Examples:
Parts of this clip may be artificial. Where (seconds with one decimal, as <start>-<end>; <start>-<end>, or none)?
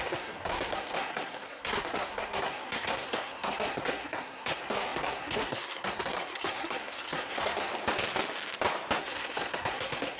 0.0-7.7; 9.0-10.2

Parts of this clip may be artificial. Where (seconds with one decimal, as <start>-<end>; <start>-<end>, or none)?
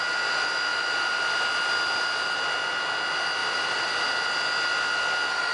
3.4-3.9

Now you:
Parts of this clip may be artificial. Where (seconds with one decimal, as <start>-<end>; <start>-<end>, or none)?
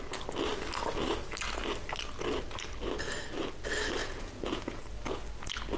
4.0-4.8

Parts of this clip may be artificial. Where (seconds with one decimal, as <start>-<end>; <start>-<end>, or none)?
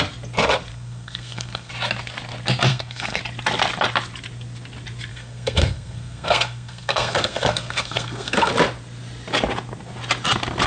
0.7-1.7; 2.7-3.2; 5.1-8.5